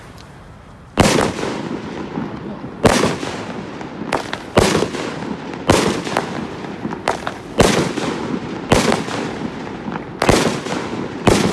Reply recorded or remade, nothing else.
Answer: recorded